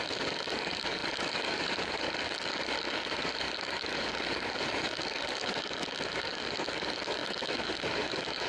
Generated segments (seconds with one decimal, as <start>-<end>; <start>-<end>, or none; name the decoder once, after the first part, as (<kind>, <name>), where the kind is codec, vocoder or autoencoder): 0.0-8.5 (codec, DAC)